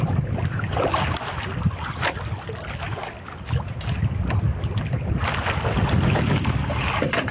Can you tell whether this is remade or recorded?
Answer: recorded